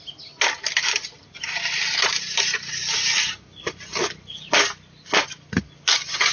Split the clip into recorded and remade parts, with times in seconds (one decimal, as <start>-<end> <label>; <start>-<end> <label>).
0.0-6.3 recorded